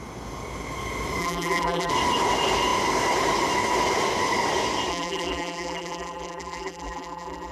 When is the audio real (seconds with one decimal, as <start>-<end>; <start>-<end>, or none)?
0.0-1.2; 1.9-4.9